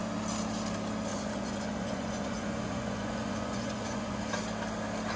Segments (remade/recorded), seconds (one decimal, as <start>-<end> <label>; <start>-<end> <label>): 0.0-1.1 recorded; 1.1-4.2 remade; 4.2-5.2 recorded